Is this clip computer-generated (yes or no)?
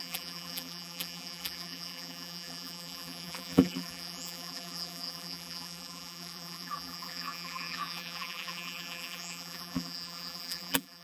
yes